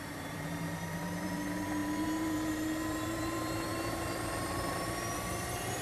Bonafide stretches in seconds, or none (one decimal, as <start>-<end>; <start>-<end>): none